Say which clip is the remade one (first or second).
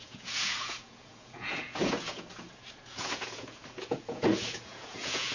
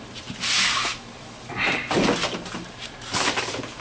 first